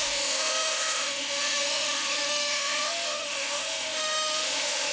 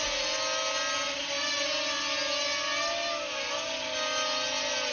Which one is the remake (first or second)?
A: first